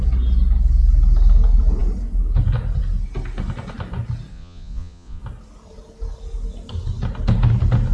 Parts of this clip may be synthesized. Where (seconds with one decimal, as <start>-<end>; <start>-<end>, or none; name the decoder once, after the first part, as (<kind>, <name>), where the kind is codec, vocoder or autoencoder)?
4.3-5.2 (vocoder, Vocos)